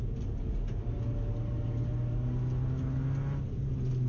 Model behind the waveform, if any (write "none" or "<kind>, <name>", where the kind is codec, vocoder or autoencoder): none